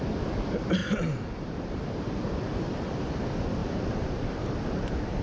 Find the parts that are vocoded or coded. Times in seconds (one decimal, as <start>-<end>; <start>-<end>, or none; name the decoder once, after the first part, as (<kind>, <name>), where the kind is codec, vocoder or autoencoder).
0.8-3.1 (vocoder, BigVGAN v2); 3.6-4.6